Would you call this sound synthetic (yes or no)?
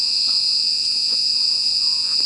yes